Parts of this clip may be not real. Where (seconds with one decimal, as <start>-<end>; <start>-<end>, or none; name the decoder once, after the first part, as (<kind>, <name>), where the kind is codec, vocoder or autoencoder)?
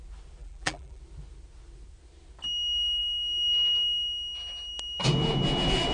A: 0.4-1.0 (vocoder, BigVGAN v2)